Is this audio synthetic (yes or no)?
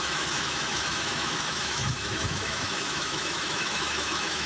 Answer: yes